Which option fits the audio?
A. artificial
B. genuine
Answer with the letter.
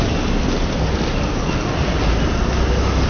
B